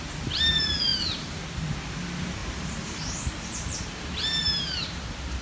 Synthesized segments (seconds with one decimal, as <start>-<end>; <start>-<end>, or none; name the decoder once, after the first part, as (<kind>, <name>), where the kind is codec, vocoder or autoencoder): 0.9-1.4 (vocoder, BigVGAN v2); 2.4-5.4